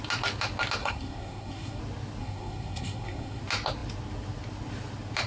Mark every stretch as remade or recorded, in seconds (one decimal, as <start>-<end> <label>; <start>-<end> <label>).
0.0-0.8 recorded; 0.8-1.8 remade; 1.8-2.2 recorded; 2.2-3.4 remade; 3.4-5.3 recorded